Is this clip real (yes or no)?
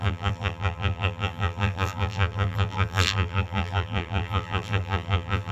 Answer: no